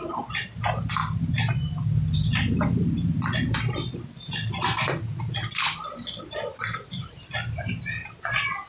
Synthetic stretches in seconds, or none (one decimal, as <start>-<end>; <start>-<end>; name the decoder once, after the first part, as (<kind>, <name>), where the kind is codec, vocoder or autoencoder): 2.3-7.1 (vocoder, BigVGAN v2)